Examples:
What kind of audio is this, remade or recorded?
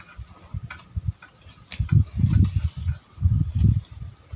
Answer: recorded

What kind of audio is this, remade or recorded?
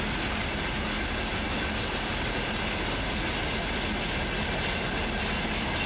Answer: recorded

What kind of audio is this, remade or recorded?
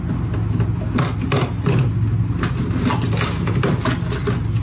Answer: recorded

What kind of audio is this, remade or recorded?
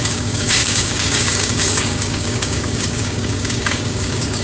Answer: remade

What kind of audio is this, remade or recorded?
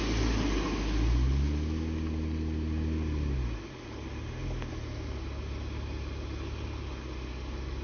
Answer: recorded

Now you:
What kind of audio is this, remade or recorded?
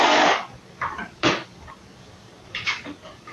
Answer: remade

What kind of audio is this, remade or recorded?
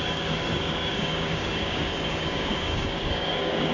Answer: remade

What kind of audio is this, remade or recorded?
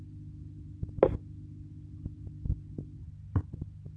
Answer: recorded